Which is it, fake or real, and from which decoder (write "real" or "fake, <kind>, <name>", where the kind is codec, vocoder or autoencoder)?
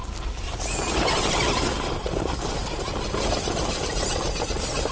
real